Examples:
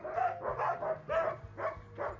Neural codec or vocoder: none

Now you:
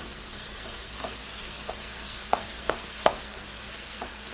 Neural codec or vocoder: codec, SNAC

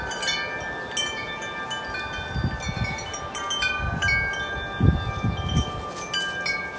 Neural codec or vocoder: none